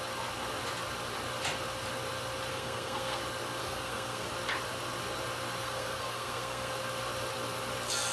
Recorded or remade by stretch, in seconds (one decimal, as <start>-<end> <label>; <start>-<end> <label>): 0.0-2.5 recorded; 2.5-3.2 remade; 3.2-3.6 recorded; 3.6-4.3 remade; 4.3-5.6 recorded; 5.6-6.7 remade; 6.7-8.1 recorded